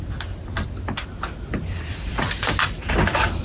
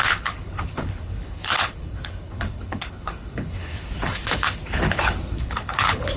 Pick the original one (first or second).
first